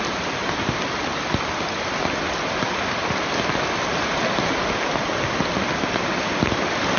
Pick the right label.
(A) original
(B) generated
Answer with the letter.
A